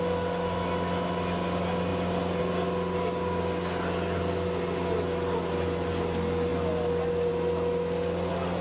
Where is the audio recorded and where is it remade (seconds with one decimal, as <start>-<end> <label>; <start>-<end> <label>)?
0.0-8.6 recorded